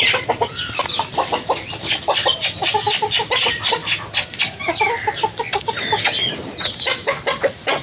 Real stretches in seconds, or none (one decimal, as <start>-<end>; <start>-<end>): 0.0-7.8